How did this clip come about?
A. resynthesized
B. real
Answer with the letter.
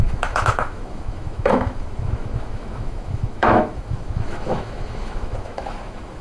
A